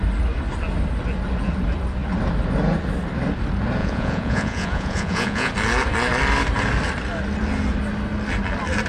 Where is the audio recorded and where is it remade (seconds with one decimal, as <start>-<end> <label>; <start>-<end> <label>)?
0.0-3.8 recorded; 3.8-5.5 remade; 5.5-8.9 recorded